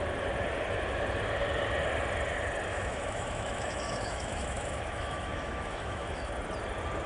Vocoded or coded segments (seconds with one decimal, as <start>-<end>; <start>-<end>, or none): 2.7-6.3